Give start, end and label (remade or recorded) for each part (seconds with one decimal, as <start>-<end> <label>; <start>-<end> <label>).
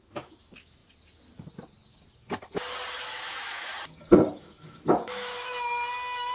0.0-0.8 remade; 0.8-3.0 recorded; 3.0-3.7 remade; 3.7-4.3 recorded; 4.3-6.3 remade